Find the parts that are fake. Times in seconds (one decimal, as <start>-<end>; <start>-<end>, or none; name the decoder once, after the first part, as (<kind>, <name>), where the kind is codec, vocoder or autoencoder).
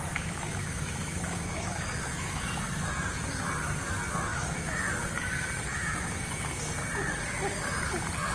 0.6-2.6 (autoencoder, DAC-VAE); 4.3-4.9; 5.7-6.6